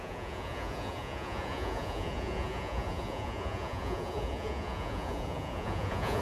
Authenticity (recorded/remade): remade